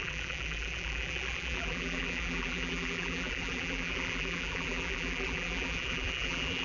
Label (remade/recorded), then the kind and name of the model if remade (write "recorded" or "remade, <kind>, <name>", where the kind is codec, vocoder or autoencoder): remade, vocoder, BigVGAN v2